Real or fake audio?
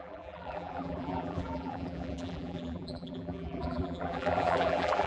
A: fake